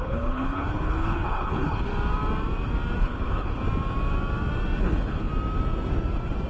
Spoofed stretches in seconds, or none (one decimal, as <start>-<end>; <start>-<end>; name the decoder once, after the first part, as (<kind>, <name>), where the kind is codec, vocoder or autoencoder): 0.0-1.9 (codec, HILCodec); 3.0-3.6; 4.8-5.3